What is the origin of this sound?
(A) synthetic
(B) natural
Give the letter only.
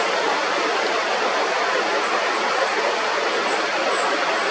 B